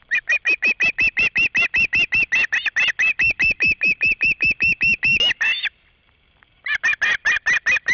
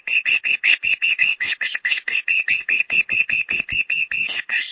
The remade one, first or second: second